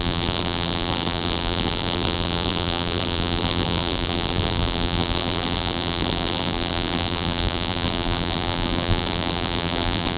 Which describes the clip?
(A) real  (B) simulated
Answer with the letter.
B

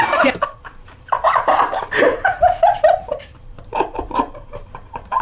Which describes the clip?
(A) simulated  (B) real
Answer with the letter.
A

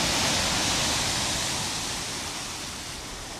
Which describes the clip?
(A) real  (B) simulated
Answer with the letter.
A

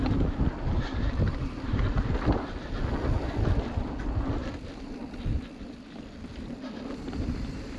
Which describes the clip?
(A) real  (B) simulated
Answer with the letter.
B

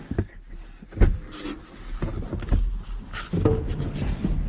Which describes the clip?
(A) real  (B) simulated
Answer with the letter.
A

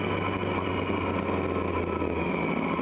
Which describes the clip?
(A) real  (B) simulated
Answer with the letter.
A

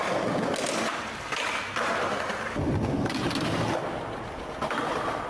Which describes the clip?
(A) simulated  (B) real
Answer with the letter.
B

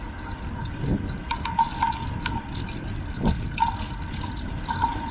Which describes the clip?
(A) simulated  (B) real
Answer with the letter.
B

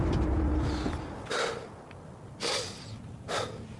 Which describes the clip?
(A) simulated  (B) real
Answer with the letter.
B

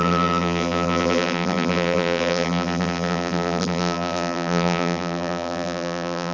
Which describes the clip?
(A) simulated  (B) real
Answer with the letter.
A